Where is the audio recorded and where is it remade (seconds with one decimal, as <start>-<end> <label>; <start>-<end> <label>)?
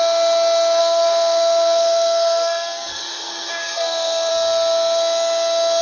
0.0-0.8 recorded; 0.8-4.3 remade; 4.3-5.8 recorded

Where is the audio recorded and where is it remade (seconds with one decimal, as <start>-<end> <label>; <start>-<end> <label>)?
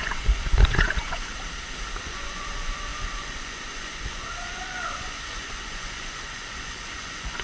0.0-1.3 remade; 1.3-2.0 recorded; 2.0-7.4 remade